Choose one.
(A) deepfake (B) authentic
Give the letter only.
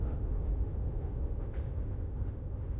A